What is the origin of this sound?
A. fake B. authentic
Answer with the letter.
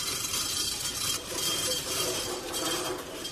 A